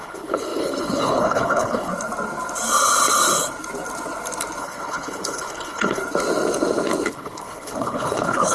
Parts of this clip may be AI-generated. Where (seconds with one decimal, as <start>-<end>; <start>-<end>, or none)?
0.0-1.9; 4.6-6.0; 7.1-8.5